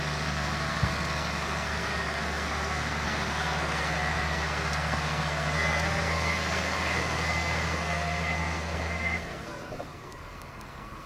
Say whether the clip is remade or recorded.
remade